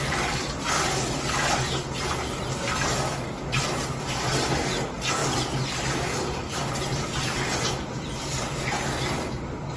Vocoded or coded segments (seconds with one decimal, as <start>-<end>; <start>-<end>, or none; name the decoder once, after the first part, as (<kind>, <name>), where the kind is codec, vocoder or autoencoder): none